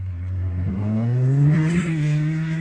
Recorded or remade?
remade